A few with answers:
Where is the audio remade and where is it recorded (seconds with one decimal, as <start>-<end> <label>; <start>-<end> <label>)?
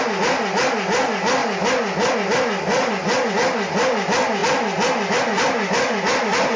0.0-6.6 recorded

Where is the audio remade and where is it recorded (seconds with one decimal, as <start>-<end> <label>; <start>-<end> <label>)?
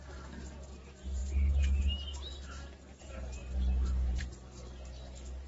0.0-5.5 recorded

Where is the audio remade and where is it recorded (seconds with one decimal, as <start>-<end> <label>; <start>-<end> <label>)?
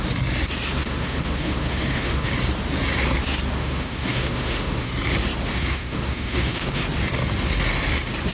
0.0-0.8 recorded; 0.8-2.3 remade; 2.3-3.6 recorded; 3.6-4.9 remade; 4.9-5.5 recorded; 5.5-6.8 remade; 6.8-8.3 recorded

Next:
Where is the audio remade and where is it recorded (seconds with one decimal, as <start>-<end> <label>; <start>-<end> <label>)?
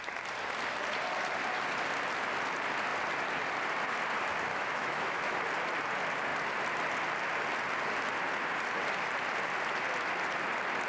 0.0-4.5 recorded; 4.5-5.4 remade; 5.4-10.9 recorded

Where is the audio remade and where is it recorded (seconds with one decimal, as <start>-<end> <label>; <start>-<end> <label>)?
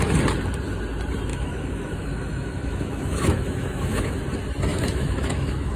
0.0-1.3 recorded; 1.3-4.2 remade; 4.2-4.7 recorded; 4.7-5.8 remade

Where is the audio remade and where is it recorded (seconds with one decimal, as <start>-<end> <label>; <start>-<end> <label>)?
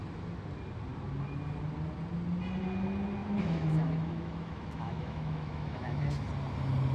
0.0-3.2 recorded; 3.2-6.3 remade; 6.3-6.9 recorded